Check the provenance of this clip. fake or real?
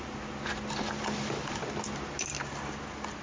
real